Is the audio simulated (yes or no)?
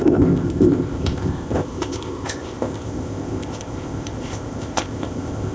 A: yes